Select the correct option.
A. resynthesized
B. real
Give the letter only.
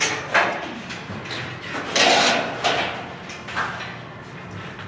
B